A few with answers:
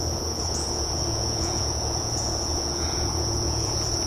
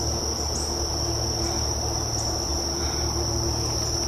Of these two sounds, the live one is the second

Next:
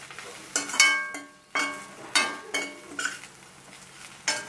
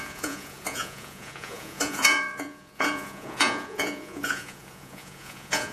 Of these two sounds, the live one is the first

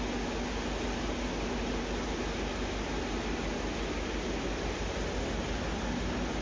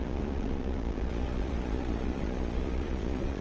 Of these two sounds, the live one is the first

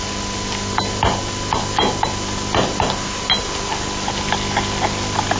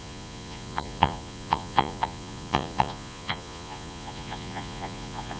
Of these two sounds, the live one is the first